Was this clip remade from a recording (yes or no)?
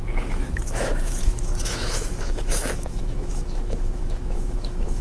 yes